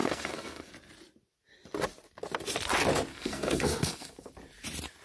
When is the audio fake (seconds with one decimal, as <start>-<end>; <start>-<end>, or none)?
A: 0.0-0.7; 3.1-4.3